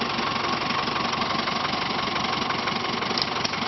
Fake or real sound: real